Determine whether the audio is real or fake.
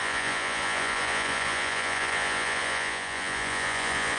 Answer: fake